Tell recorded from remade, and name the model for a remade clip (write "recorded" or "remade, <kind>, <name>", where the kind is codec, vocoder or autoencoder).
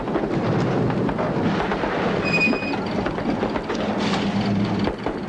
recorded